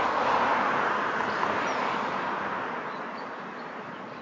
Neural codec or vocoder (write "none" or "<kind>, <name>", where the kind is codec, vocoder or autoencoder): none